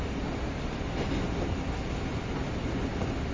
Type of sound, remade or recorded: recorded